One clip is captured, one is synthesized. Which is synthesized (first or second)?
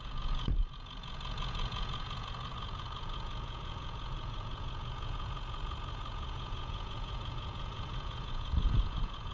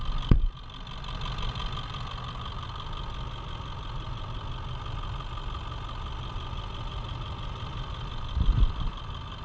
first